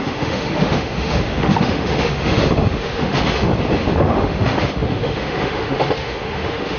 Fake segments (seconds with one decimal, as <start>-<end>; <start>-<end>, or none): 0.0-3.5; 4.0-6.8